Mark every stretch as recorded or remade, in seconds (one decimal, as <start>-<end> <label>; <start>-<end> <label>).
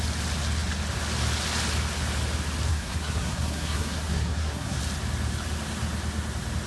0.0-2.7 recorded; 2.7-4.8 remade; 4.8-6.7 recorded